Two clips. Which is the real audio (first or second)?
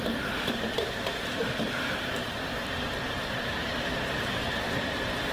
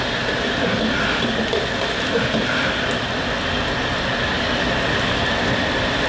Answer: second